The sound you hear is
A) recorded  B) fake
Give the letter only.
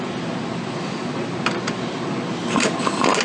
A